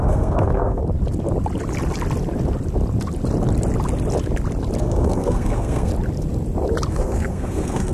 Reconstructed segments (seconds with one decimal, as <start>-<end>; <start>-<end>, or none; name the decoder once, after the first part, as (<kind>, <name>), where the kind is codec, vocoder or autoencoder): 0.0-0.8 (codec, SNAC); 4.8-5.9; 6.9-7.9